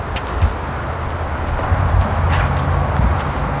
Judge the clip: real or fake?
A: real